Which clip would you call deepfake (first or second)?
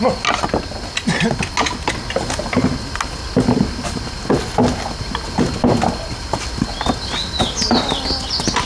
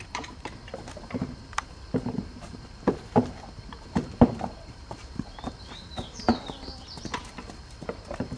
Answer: second